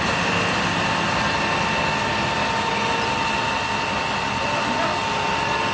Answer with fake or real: real